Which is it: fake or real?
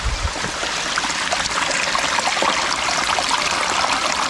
real